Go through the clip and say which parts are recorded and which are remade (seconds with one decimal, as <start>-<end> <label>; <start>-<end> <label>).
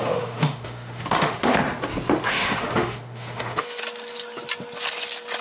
0.0-1.6 remade; 1.6-2.3 recorded; 2.3-3.8 remade; 3.8-5.4 recorded